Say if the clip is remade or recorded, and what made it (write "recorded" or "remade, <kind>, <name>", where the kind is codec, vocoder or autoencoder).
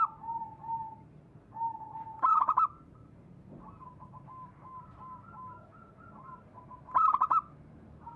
recorded